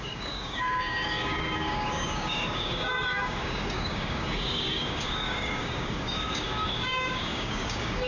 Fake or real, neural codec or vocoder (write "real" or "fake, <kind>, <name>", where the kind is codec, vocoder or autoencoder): fake, codec, DAC